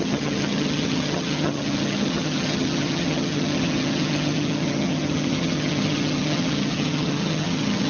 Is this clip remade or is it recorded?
remade